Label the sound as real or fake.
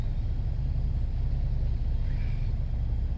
real